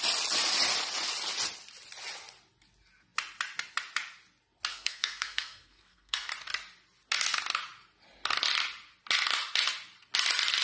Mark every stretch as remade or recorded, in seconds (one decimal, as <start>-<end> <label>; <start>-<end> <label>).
0.0-4.7 recorded; 4.7-6.3 remade; 6.3-10.6 recorded